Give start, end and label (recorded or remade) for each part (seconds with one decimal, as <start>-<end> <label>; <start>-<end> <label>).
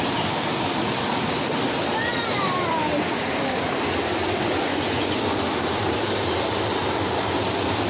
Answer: 0.0-4.7 recorded; 4.7-5.2 remade; 5.2-7.9 recorded